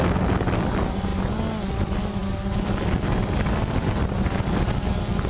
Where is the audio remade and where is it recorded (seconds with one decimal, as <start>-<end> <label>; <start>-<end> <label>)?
0.0-5.3 recorded